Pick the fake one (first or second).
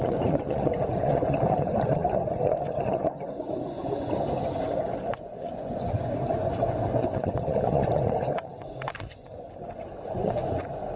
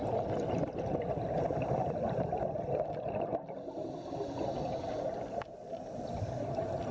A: first